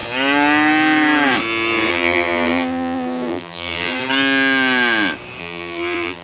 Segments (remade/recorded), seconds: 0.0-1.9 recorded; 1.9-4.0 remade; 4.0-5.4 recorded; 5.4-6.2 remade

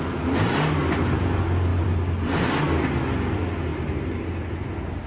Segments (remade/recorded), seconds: 0.0-1.7 recorded; 1.7-2.6 remade; 2.6-5.1 recorded

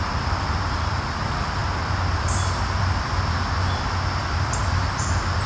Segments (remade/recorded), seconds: 0.0-1.6 remade; 1.6-2.2 recorded; 2.2-3.4 remade; 3.4-4.3 recorded; 4.3-5.5 remade

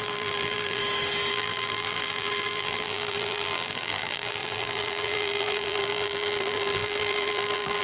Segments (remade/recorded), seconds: 0.0-0.8 remade; 0.8-1.3 recorded; 1.3-7.8 remade

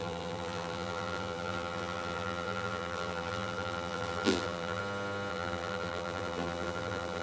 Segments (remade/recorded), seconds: 0.0-4.8 remade; 4.8-5.3 recorded; 5.3-7.2 remade